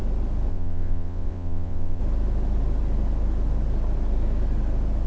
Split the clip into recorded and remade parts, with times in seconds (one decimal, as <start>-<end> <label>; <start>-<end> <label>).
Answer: 0.0-0.5 recorded; 0.5-2.0 remade; 2.0-5.1 recorded